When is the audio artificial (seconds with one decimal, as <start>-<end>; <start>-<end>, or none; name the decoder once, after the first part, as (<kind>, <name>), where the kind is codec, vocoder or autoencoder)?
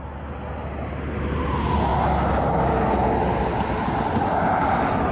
none